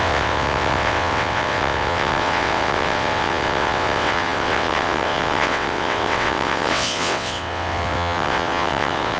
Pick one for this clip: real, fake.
fake